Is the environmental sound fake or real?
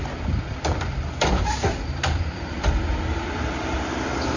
fake